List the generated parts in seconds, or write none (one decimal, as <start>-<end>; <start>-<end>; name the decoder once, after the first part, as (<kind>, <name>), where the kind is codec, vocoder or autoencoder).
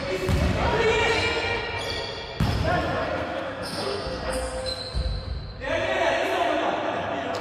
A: 1.1-1.6 (codec, SNAC); 3.0-4.8